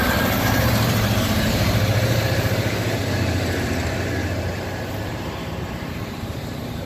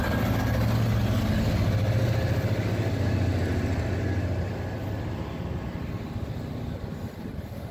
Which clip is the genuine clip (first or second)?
second